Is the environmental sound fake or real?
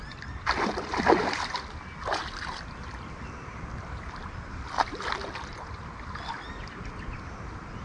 real